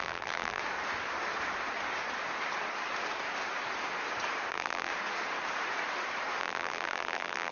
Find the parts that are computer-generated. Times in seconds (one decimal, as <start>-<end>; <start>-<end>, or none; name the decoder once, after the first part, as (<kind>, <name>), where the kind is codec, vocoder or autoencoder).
0.0-0.6 (vocoder, BigVGAN v2); 4.5-4.9; 6.4-7.5